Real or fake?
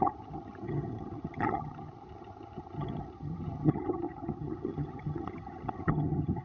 fake